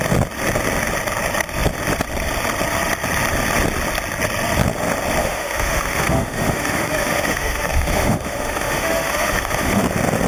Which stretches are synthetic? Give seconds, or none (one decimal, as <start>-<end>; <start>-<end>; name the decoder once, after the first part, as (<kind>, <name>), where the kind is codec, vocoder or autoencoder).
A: 5.2-9.8 (autoencoder, DAC-VAE)